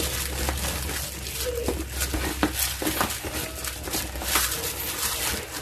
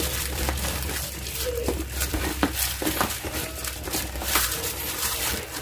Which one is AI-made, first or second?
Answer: second